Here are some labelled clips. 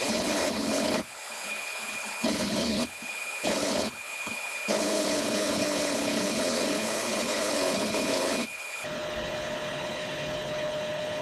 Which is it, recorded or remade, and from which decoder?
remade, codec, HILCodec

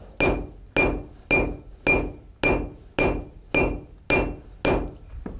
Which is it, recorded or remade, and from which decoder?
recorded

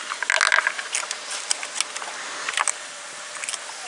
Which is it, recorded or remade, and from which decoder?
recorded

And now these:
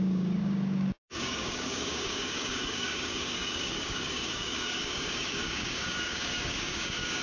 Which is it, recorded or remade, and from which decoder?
remade, codec, DAC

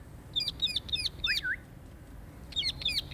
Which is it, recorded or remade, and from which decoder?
recorded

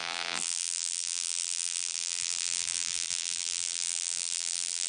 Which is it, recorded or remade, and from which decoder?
remade, vocoder, BigVGAN v2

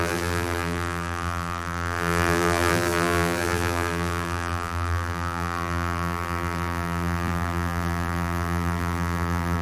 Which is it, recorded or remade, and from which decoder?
remade, vocoder, BigVGAN v2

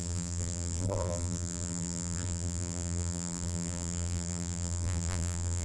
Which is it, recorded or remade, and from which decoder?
remade, vocoder, BigVGAN v2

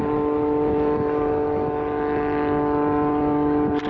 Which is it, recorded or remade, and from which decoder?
recorded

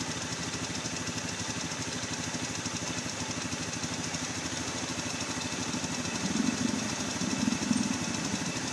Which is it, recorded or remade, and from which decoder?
recorded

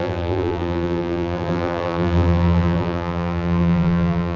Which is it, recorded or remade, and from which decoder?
remade, vocoder, BigVGAN v2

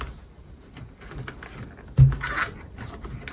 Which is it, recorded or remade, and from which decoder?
recorded